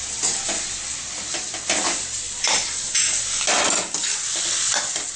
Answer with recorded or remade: recorded